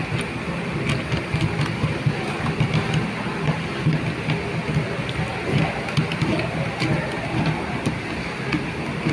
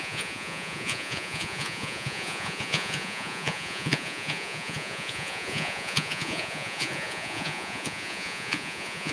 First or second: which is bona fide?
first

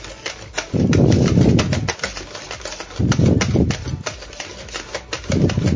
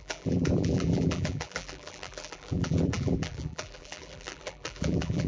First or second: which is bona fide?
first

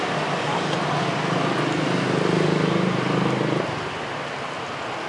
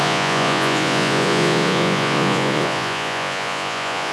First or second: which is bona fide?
first